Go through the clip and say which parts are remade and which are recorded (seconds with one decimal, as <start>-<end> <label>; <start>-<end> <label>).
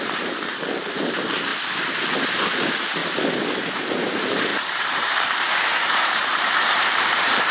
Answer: 0.0-1.5 remade; 1.5-2.1 recorded; 2.1-3.0 remade; 3.0-3.6 recorded; 3.6-7.5 remade